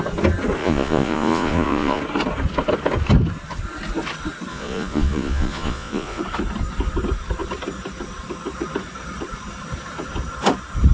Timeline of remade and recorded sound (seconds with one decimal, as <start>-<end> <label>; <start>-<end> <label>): 0.0-0.6 recorded; 0.6-2.0 remade; 2.0-4.5 recorded; 4.5-6.2 remade; 6.2-10.9 recorded